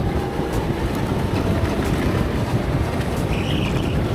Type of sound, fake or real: real